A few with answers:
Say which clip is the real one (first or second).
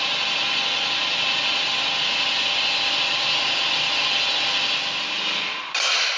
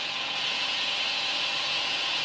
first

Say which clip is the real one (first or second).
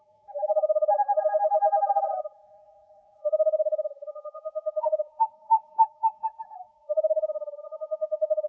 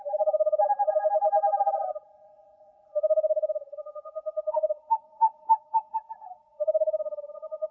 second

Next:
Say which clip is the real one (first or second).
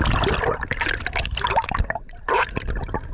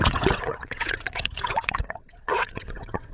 first